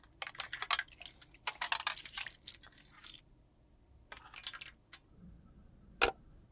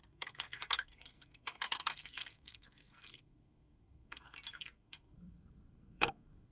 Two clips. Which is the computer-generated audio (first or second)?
second